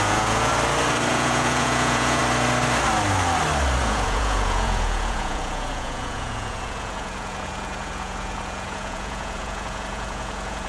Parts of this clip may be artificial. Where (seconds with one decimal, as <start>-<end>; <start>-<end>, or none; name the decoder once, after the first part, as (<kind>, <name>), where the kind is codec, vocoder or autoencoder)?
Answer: 0.0-0.5 (vocoder, Vocos); 1.1-2.2; 3.8-10.7